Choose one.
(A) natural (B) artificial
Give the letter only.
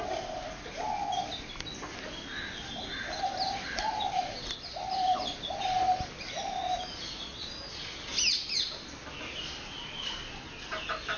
A